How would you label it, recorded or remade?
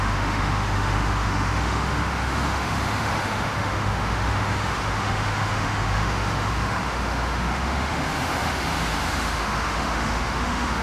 remade